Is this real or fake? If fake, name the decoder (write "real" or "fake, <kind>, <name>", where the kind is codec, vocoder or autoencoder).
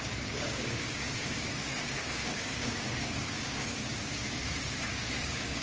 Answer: fake, codec, DAC